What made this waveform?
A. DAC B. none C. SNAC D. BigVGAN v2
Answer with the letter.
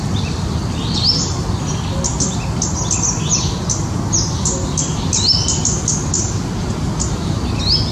B